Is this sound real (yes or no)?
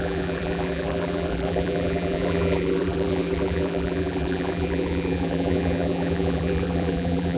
no